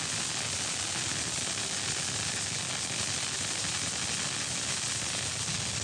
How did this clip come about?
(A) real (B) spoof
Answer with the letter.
A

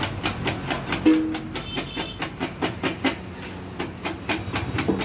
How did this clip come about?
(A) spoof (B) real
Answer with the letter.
B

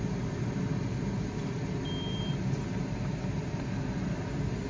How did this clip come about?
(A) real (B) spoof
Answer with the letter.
A